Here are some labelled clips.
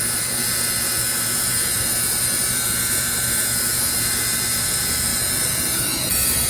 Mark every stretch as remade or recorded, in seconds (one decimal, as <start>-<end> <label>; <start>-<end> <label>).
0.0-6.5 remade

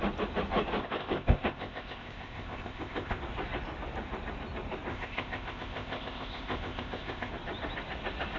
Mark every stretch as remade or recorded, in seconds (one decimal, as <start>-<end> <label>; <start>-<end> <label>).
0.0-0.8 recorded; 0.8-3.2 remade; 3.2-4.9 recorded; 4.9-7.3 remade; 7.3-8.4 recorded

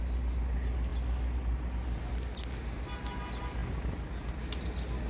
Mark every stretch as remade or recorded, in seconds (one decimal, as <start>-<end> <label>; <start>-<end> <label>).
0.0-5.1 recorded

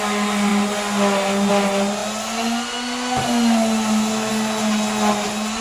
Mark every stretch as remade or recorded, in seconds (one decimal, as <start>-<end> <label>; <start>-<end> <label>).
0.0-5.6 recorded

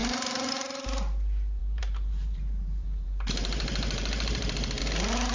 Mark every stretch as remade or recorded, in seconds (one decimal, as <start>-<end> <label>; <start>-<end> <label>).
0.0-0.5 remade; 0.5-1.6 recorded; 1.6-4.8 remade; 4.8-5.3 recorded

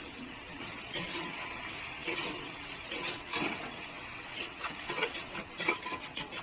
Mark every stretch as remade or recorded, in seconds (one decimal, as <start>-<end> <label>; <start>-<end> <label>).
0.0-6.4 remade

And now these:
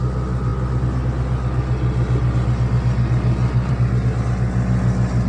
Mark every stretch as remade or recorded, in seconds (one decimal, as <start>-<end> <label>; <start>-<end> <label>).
0.0-5.3 recorded